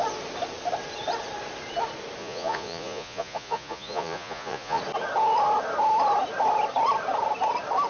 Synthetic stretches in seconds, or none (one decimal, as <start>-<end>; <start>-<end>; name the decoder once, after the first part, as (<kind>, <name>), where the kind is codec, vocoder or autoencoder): 2.2-4.8 (vocoder, Vocos)